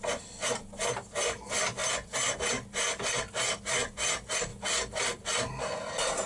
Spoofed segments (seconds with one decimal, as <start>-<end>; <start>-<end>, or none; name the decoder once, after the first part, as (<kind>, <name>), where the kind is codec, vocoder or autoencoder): none